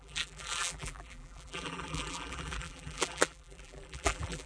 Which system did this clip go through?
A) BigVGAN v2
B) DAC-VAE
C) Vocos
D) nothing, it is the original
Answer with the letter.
A